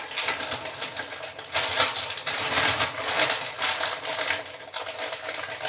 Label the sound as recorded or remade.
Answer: recorded